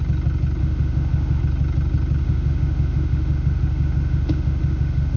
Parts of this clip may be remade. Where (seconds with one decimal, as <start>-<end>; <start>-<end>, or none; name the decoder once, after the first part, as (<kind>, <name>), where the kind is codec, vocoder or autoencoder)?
0.6-1.4 (autoencoder, DAC-VAE); 2.2-5.2